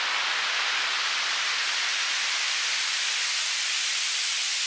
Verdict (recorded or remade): recorded